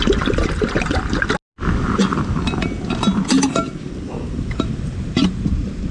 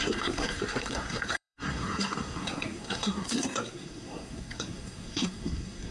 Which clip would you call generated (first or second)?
second